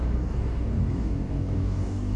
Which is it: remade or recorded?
remade